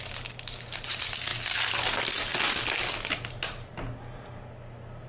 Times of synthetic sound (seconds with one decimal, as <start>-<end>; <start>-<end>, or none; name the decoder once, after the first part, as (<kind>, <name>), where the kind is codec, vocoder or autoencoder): none